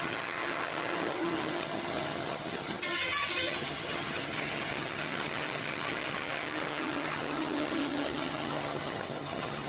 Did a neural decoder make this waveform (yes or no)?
yes